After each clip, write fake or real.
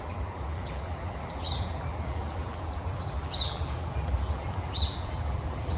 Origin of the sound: fake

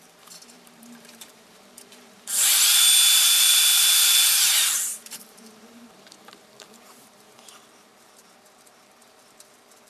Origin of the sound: fake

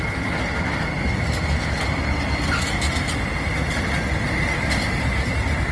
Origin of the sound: real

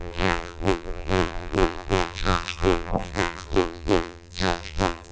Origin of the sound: fake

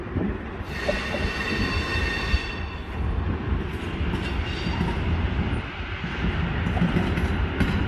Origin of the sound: real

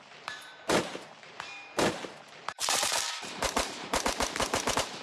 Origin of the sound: fake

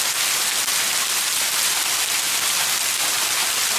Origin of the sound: real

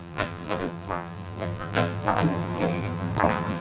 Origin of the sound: fake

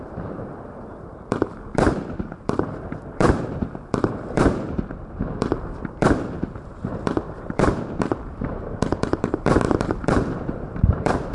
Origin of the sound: fake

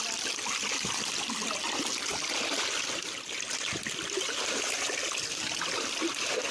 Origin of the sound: real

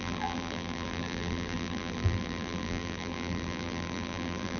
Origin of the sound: fake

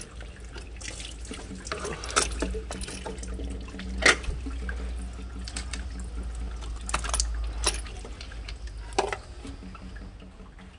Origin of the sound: real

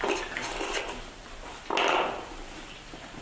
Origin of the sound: real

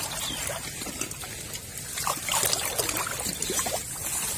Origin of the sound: real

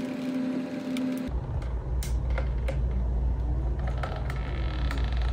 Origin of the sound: real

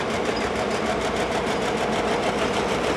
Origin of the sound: fake